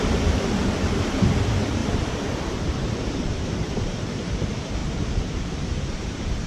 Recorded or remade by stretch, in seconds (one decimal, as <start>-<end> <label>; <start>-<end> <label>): 0.0-6.5 remade